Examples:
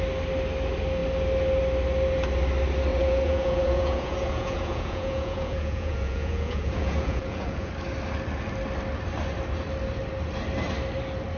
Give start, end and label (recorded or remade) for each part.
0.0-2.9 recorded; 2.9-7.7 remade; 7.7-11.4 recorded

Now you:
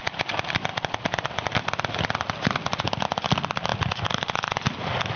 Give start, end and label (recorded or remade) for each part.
0.0-5.2 recorded

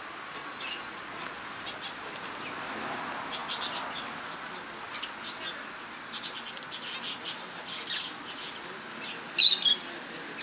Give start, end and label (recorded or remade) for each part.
0.0-0.4 recorded; 0.4-1.0 remade; 1.0-10.4 recorded

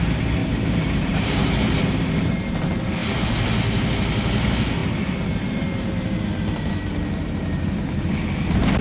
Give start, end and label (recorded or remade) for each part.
0.0-0.4 recorded; 0.4-2.3 remade; 2.3-8.8 recorded